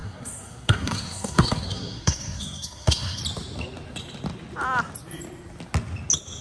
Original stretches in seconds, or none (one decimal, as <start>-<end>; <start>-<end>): 3.2-6.4